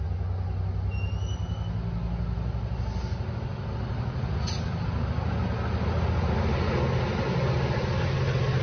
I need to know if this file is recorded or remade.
recorded